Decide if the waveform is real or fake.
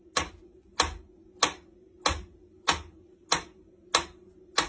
real